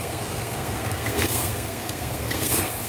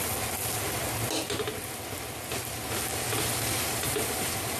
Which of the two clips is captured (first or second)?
second